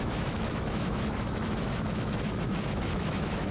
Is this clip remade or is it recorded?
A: remade